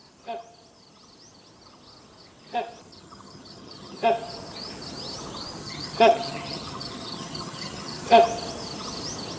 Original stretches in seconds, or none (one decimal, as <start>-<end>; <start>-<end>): 0.0-2.9; 4.0-5.6; 8.1-9.4